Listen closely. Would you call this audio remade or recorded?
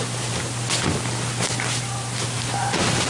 recorded